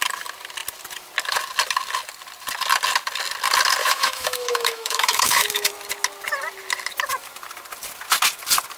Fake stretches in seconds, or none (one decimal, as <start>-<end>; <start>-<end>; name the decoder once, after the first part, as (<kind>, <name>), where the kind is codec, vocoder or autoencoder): 3.8-5.7 (autoencoder, DAC-VAE)